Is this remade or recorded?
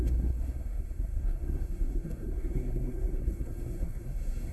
remade